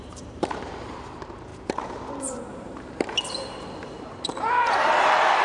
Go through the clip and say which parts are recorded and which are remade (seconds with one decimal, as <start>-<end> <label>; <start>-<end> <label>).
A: 0.0-5.4 remade